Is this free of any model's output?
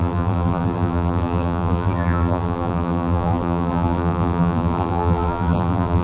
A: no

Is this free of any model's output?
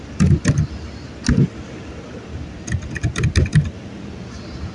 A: yes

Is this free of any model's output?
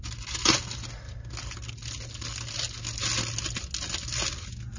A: yes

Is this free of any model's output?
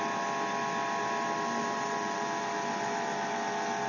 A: yes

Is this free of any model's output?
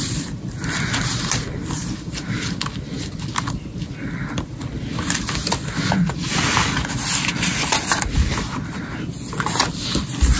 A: yes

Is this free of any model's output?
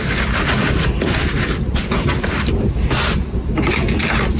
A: yes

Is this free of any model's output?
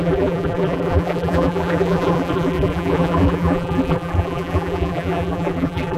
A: no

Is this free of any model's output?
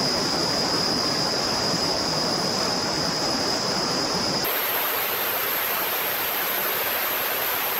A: no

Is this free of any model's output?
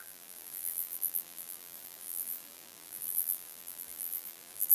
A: no